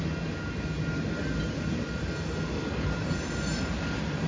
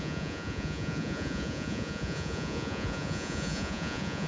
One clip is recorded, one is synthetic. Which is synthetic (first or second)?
second